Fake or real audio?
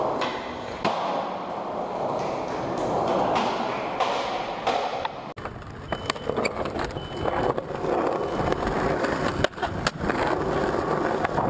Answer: real